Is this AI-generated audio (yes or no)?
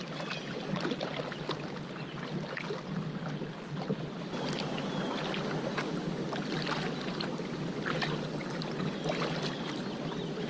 no